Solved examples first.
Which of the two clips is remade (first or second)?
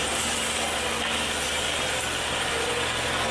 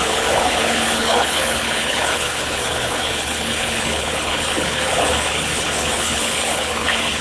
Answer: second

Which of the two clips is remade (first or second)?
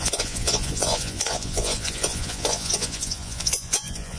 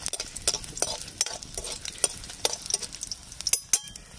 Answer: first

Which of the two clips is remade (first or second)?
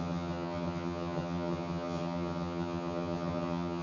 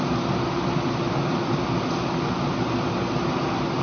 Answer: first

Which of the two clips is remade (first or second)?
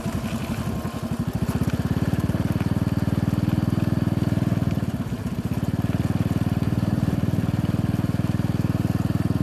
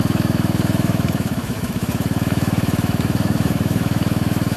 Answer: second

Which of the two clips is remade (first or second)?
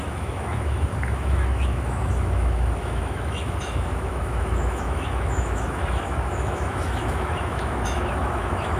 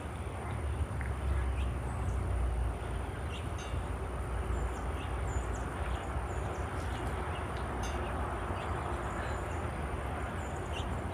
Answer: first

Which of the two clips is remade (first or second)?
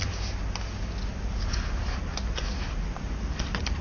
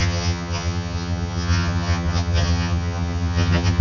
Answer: second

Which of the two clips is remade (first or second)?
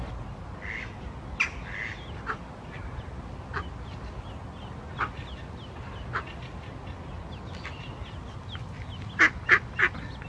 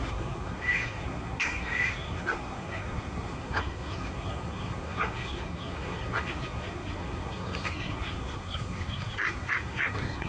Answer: second